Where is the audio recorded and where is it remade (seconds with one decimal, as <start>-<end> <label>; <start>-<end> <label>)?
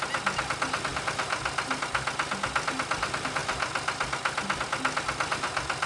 0.0-5.9 recorded